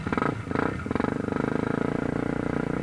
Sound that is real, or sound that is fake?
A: real